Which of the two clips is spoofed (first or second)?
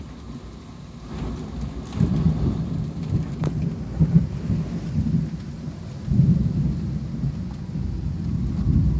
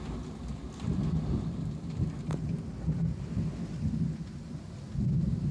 first